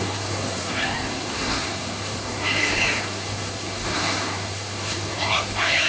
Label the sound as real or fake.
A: fake